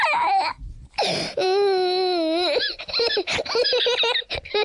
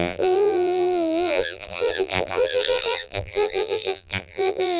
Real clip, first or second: first